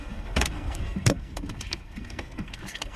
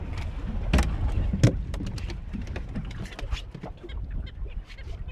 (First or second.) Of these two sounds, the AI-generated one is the first